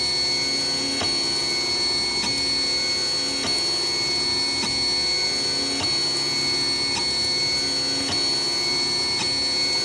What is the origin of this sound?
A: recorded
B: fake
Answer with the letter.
A